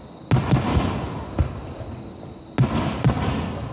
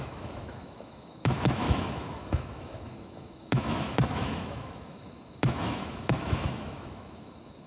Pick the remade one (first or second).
second